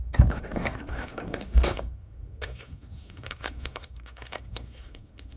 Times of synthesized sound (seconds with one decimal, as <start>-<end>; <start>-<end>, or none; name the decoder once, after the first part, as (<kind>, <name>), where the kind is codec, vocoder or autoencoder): 0.0-5.4 (codec, SNAC)